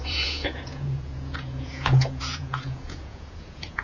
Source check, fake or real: fake